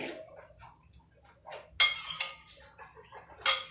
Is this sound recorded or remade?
recorded